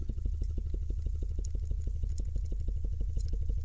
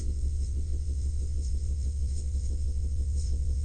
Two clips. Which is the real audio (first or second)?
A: first